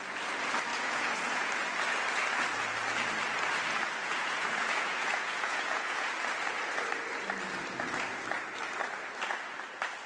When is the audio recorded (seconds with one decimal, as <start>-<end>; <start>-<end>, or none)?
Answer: 0.0-0.7; 1.5-4.0; 6.1-10.1